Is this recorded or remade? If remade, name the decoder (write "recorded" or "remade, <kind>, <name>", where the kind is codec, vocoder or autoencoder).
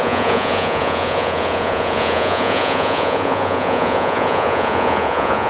remade, vocoder, Vocos